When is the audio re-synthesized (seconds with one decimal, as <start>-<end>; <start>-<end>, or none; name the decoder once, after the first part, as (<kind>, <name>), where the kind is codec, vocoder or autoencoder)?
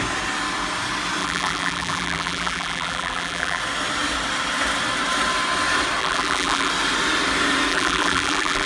1.2-3.6 (vocoder, BigVGAN v2); 6.0-6.7; 7.7-8.7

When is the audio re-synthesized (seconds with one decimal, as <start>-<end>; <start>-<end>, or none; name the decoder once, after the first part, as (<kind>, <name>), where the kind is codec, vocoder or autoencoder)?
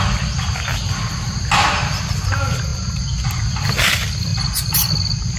none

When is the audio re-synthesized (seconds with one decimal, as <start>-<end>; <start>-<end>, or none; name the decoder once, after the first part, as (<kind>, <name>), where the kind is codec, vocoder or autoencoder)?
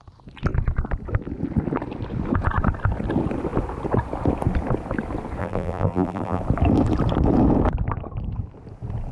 5.4-6.4 (vocoder, BigVGAN v2)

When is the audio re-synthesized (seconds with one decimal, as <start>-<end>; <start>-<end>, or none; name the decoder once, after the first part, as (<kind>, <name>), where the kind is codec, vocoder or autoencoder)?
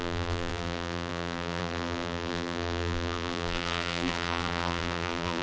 0.0-5.4 (vocoder, BigVGAN v2)